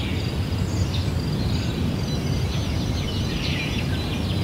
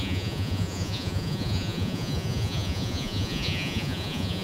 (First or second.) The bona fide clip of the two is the first